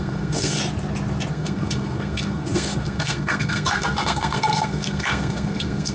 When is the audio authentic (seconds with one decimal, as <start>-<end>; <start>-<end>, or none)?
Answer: 0.6-1.3